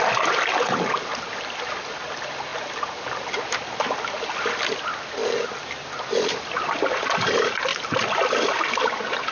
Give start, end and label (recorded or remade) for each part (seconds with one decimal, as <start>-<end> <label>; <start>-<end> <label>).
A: 0.0-9.3 recorded